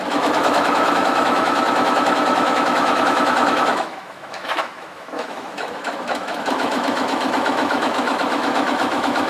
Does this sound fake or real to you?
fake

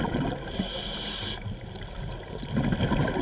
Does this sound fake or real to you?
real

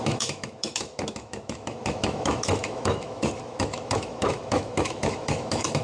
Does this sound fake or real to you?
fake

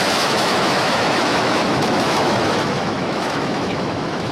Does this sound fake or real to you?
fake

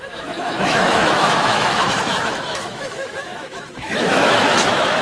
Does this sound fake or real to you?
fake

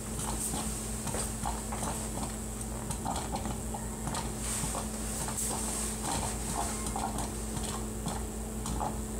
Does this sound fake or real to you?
real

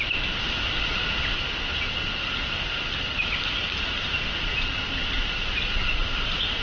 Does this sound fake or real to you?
real